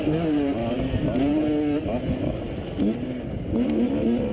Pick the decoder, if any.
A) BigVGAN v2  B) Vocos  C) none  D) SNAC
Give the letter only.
C